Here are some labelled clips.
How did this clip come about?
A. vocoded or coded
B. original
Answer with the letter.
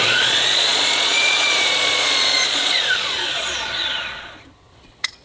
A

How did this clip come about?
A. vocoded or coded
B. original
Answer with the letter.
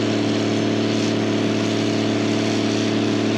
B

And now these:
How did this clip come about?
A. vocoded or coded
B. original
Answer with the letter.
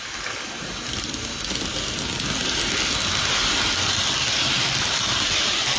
B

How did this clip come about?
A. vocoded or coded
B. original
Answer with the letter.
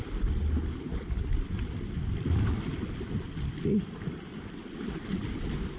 B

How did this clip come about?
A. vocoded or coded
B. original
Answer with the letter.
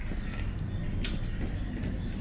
B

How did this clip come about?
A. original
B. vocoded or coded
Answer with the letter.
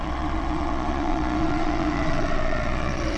B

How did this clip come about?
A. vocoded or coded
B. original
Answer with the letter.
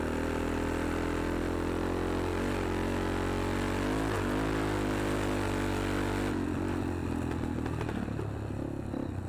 B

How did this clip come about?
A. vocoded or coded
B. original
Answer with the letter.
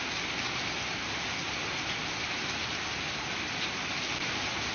B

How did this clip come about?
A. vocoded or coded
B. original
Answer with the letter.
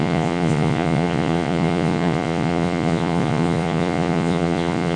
A